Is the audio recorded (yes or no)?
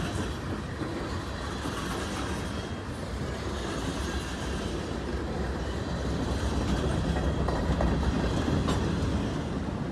yes